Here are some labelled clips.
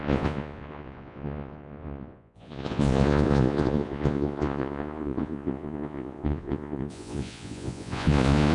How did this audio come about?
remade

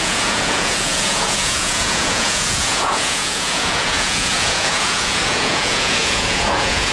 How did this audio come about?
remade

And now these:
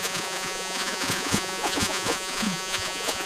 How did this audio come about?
remade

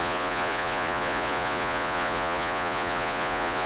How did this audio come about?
remade